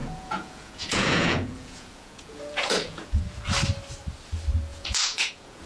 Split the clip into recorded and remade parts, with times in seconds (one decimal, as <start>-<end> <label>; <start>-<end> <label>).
0.0-3.2 remade; 3.2-4.7 recorded; 4.7-5.7 remade

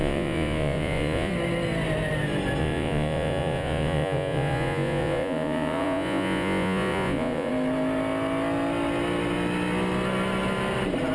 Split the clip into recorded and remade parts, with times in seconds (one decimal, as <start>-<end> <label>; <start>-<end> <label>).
0.0-1.3 remade; 1.3-2.6 recorded; 2.6-7.5 remade; 7.5-11.1 recorded

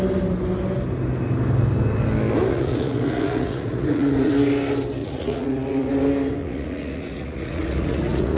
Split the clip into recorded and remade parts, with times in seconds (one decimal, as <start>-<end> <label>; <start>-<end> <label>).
0.0-2.5 recorded; 2.5-4.3 remade; 4.3-5.0 recorded; 5.0-5.9 remade; 5.9-6.4 recorded; 6.4-8.4 remade

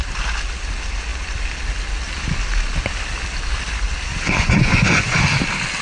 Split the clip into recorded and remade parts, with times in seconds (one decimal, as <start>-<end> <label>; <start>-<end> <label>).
0.0-4.1 recorded; 4.1-5.2 remade; 5.2-5.8 recorded